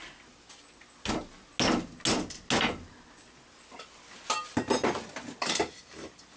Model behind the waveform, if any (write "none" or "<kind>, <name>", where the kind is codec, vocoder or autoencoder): none